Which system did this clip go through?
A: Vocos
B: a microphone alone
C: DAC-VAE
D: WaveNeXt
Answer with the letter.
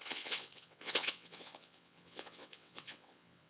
D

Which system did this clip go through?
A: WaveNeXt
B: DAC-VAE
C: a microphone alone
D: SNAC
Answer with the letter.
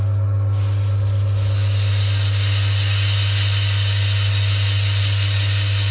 C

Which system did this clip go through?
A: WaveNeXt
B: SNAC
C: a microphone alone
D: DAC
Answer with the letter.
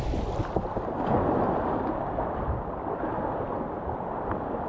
C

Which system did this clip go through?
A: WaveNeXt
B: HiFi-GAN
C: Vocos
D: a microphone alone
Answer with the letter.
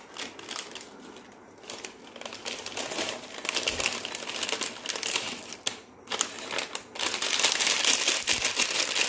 D